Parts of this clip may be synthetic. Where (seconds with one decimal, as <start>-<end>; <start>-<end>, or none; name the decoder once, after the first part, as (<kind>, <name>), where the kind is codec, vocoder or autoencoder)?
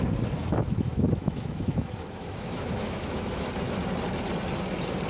0.4-3.5 (autoencoder, DAC-VAE)